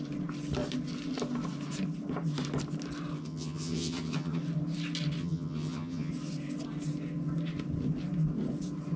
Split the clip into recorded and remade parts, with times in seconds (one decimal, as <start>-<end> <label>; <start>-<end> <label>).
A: 0.0-3.2 recorded; 3.2-4.4 remade; 4.4-5.2 recorded; 5.2-6.1 remade; 6.1-9.0 recorded